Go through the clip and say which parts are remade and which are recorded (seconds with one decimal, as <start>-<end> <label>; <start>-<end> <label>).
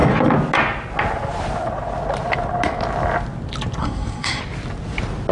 0.0-3.8 recorded; 3.8-4.4 remade; 4.4-5.3 recorded